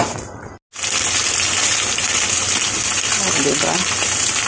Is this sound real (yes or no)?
yes